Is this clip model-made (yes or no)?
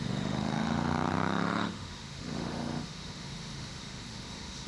yes